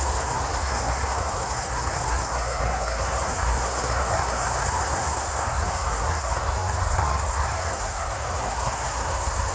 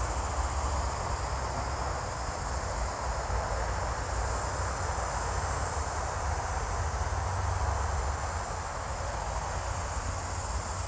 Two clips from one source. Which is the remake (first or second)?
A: first